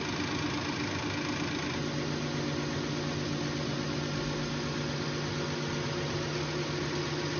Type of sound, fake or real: real